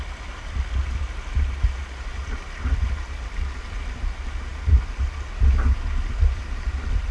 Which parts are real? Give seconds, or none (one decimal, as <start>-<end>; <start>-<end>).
0.0-7.1